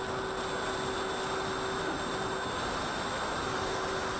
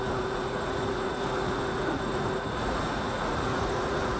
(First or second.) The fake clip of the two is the second